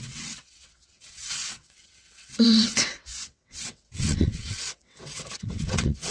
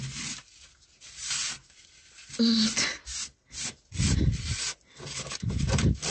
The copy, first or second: first